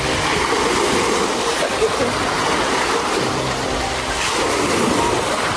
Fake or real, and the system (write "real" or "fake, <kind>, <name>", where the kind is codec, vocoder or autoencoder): real